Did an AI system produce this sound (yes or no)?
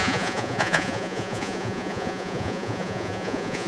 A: yes